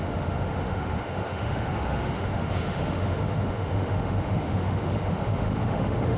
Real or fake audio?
fake